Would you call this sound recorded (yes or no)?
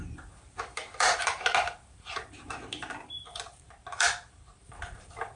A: no